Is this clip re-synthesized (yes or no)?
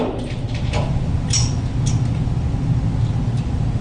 no